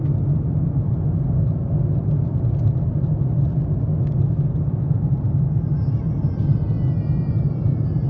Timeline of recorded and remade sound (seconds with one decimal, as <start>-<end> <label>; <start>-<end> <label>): 0.0-8.1 recorded